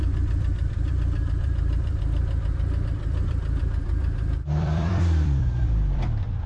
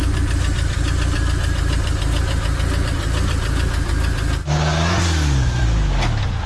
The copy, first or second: first